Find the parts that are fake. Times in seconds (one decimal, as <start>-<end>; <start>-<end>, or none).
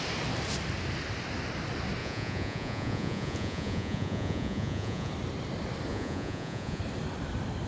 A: 2.0-5.1; 5.9-6.8